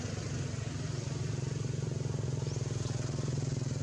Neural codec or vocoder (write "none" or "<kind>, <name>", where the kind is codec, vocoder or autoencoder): none